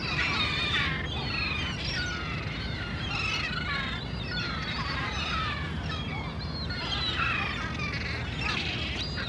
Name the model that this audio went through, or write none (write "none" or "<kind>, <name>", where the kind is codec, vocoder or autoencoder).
none